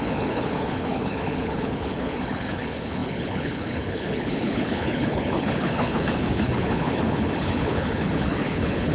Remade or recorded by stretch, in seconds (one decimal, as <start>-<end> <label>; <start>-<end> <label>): 0.0-8.9 remade